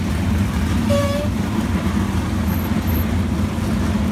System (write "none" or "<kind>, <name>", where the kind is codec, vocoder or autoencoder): none